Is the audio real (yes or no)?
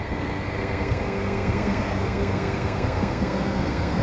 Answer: no